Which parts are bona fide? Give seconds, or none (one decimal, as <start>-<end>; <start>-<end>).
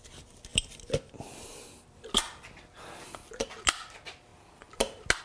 0.0-5.2